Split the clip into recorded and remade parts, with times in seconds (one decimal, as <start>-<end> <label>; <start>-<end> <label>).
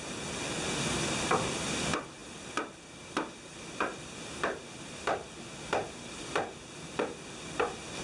0.0-2.2 recorded; 2.2-4.1 remade; 4.1-8.0 recorded